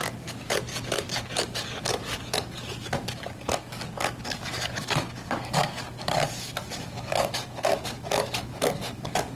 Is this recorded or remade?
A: remade